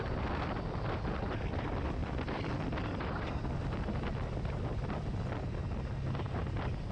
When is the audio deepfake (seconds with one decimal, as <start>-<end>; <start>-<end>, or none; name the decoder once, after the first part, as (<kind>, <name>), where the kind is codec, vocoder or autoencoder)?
2.0-3.7 (vocoder, BigVGAN v2)